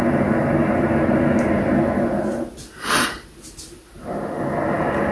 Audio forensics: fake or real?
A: real